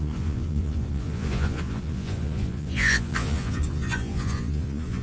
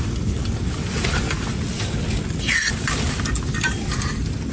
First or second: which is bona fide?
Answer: second